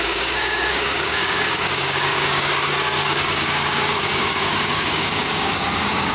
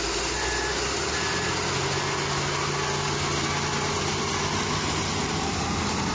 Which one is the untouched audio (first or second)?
second